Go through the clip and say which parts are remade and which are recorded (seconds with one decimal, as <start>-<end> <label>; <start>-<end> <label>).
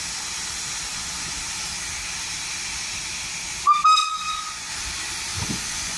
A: 0.0-0.9 recorded; 0.9-1.4 remade; 1.4-4.0 recorded; 4.0-4.7 remade; 4.7-5.3 recorded; 5.3-6.0 remade